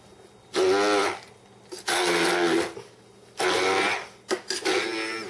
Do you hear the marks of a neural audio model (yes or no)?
no